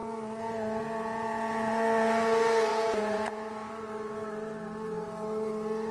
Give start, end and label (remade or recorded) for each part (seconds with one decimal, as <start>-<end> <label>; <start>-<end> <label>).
0.0-2.7 recorded; 2.7-3.7 remade; 3.7-5.9 recorded